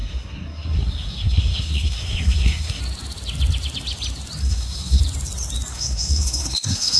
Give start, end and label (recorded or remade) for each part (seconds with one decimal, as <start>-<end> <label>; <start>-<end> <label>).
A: 0.0-2.8 remade; 2.8-4.4 recorded; 4.4-5.0 remade; 5.0-5.7 recorded; 5.7-7.0 remade